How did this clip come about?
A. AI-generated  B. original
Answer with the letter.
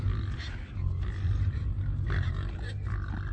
B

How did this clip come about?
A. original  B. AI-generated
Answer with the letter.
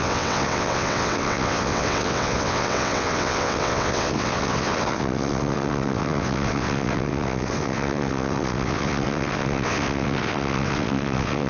B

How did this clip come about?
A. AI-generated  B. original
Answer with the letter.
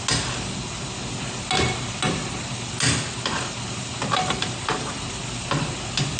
B